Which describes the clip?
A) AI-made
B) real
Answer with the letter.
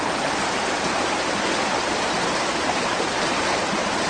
A